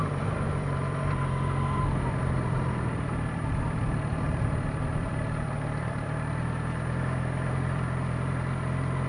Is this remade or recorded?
remade